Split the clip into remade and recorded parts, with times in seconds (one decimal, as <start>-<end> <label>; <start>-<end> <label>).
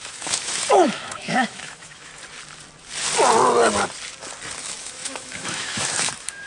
0.0-2.1 remade; 2.1-4.6 recorded; 4.6-6.5 remade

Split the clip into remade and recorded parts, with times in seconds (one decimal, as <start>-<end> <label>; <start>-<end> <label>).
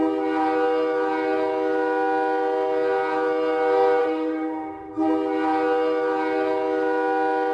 0.0-4.0 recorded; 4.0-4.9 remade; 4.9-7.5 recorded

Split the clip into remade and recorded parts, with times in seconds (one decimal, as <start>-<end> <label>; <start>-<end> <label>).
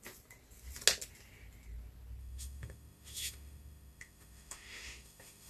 0.0-2.2 recorded; 2.2-5.5 remade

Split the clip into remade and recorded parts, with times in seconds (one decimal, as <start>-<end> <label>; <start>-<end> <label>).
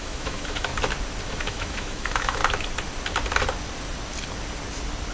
0.0-0.7 remade; 0.7-1.3 recorded; 1.3-2.4 remade; 2.4-5.1 recorded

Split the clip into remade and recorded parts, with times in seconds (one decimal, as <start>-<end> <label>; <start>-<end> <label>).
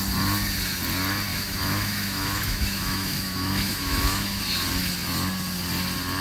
0.0-1.3 recorded; 1.3-4.4 remade; 4.4-6.2 recorded